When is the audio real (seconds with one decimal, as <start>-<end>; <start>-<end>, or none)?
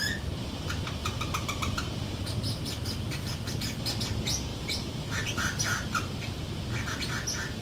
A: 0.0-1.0; 3.5-4.5; 6.4-7.6